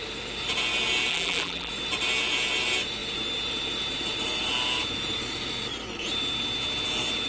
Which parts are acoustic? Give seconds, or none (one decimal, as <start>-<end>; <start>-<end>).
0.0-1.1; 1.7-7.3